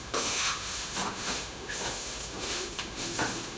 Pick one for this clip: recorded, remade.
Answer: remade